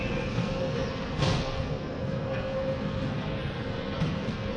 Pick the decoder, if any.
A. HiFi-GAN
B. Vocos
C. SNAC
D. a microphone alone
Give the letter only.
C